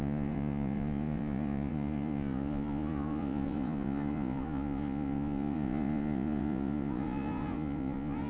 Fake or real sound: fake